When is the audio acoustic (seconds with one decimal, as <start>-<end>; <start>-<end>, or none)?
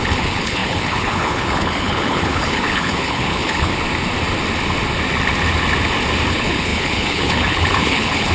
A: 3.7-6.3